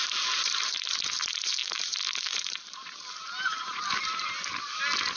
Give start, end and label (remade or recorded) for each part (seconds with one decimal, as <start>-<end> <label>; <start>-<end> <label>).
0.0-1.0 remade; 1.0-1.6 recorded; 1.6-4.3 remade; 4.3-5.2 recorded